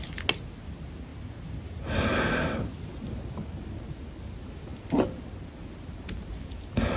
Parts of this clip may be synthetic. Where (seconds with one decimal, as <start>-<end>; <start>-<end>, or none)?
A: none